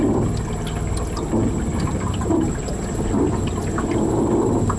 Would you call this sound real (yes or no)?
yes